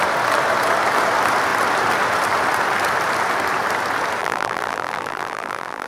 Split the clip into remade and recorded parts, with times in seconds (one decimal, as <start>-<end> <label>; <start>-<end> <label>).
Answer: 0.0-4.2 recorded; 4.2-5.9 remade